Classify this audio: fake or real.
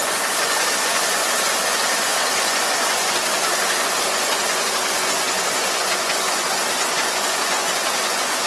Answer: fake